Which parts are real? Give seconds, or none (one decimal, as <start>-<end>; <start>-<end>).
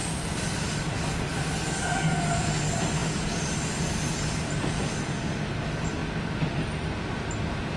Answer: 0.0-3.0; 5.2-7.8